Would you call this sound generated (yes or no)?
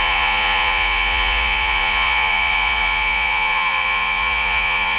yes